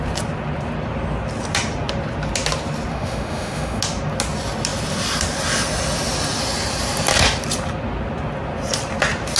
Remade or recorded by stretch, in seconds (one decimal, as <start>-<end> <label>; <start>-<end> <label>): 0.0-2.9 recorded; 2.9-3.8 remade; 3.8-9.4 recorded